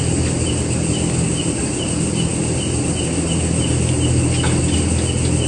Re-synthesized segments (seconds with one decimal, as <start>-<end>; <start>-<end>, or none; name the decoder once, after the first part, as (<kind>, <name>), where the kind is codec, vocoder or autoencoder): none